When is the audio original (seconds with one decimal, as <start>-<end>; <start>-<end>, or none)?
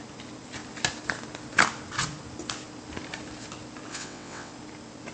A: 0.0-3.9; 4.5-5.1